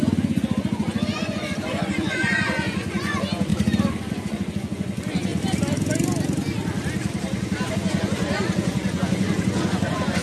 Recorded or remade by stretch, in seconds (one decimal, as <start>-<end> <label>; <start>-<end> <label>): 0.0-3.5 remade; 3.5-4.1 recorded; 4.1-5.3 remade; 5.3-7.7 recorded; 7.7-10.2 remade